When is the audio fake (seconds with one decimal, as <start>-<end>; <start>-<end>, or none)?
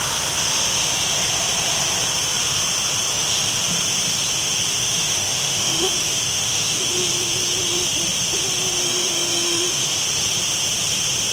3.1-3.6; 4.8-6.9; 8.8-10.0